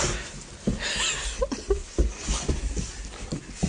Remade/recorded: recorded